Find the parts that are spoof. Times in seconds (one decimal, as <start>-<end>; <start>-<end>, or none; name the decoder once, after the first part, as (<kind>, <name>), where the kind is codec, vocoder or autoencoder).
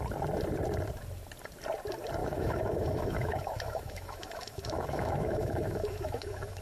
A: 2.2-6.6 (autoencoder, DAC-VAE)